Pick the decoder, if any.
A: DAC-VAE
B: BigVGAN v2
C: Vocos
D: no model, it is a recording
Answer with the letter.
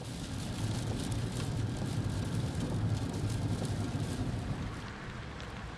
B